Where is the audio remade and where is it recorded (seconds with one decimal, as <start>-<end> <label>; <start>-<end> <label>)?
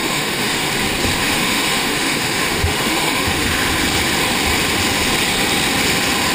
0.0-0.7 remade; 0.7-1.2 recorded; 1.2-3.6 remade; 3.6-6.3 recorded